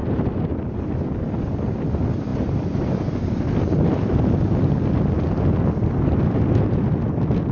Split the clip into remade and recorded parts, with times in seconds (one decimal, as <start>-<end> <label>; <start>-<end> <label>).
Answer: 0.0-0.7 remade; 0.7-2.3 recorded; 2.3-4.7 remade; 4.7-7.5 recorded